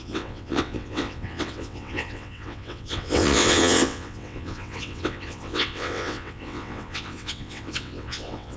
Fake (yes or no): yes